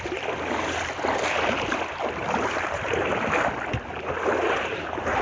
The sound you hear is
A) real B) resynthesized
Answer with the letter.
A